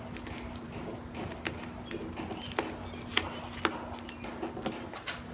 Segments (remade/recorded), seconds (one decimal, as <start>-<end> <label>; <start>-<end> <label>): 0.0-5.3 recorded